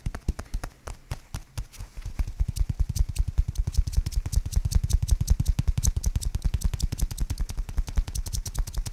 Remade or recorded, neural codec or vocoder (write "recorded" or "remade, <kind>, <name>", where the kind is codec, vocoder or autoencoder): recorded